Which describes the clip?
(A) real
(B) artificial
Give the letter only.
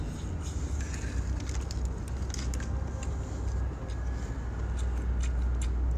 A